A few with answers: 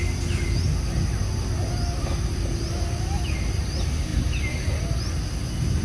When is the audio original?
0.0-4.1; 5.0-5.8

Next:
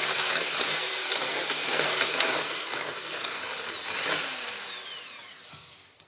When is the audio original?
3.4-5.3

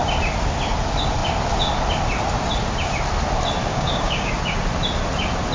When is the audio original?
0.0-3.7; 4.3-5.5

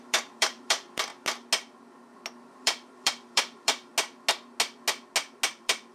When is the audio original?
1.1-2.5; 3.9-5.5

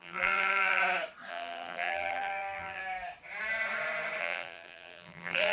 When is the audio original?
0.8-1.3; 2.8-4.2

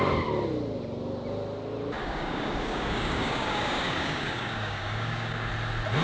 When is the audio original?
0.0-2.0; 5.5-6.0

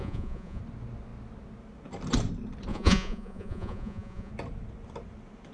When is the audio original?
0.6-2.7; 4.3-5.5

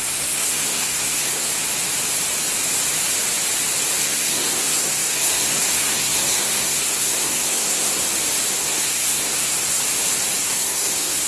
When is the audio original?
1.5-4.0; 8.0-8.5; 9.8-10.4